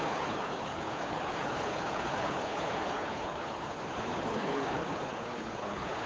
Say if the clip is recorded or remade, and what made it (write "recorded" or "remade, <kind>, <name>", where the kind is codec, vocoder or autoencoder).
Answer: remade, codec, HILCodec